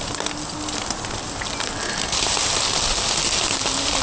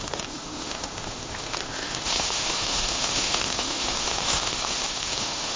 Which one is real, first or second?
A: first